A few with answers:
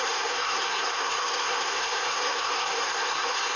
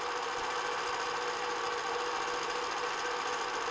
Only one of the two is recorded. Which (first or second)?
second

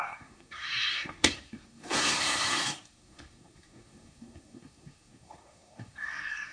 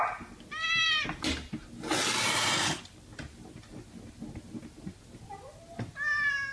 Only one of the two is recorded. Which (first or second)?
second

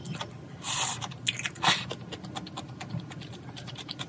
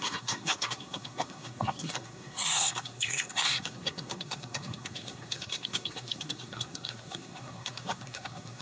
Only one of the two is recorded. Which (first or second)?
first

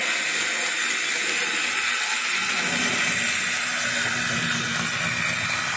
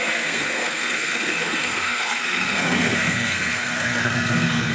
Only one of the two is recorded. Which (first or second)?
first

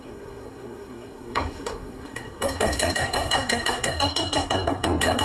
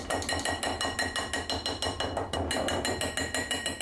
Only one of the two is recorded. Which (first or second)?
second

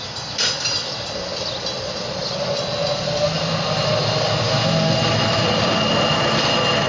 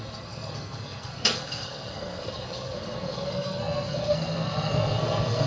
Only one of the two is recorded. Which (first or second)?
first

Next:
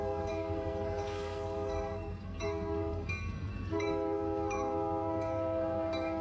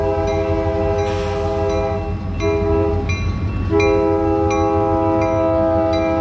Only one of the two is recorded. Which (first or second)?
second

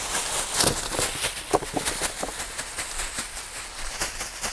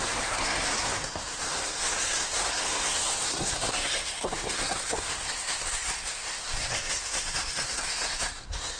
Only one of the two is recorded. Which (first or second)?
first